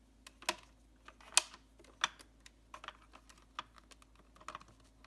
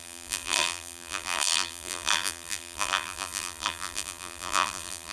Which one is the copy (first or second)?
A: second